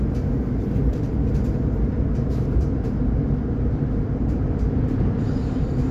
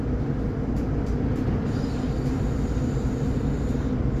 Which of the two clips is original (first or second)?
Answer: second